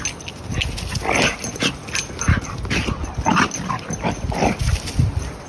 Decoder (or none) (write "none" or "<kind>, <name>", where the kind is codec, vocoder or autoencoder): none